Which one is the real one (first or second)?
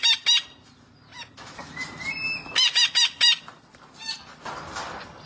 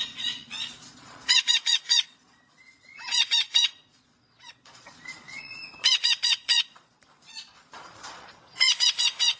first